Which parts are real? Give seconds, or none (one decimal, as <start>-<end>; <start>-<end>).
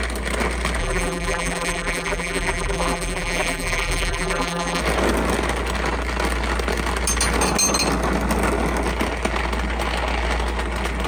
0.0-0.8; 4.8-11.1